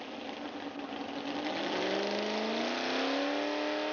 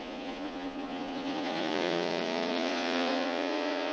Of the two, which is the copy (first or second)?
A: second